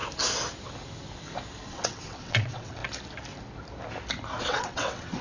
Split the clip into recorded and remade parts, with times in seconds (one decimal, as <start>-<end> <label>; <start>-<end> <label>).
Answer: 0.0-1.7 recorded; 1.7-2.8 remade; 2.8-4.4 recorded; 4.4-5.2 remade